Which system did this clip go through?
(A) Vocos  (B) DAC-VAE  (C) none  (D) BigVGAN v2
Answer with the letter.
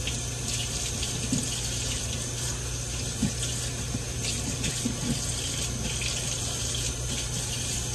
C